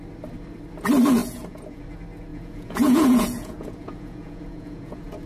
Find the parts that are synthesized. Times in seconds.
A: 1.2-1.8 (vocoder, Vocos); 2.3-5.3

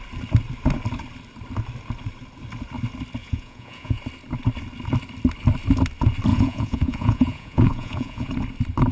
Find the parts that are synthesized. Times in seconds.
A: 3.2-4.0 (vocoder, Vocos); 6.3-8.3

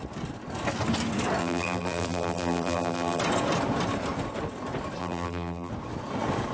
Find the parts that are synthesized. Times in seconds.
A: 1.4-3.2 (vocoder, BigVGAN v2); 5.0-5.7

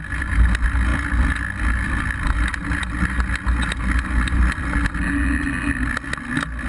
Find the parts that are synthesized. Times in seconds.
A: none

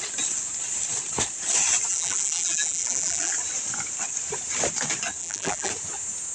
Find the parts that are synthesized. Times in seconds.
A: 1.9-3.3 (vocoder, BigVGAN v2); 5.2-5.7

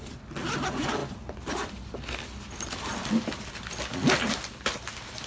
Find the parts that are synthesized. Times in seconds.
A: none

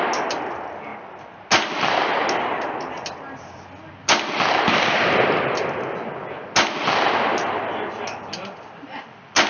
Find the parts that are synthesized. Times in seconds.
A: none

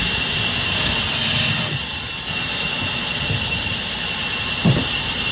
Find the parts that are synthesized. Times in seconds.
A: none